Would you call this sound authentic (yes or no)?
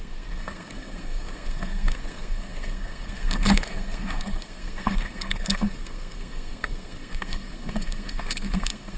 no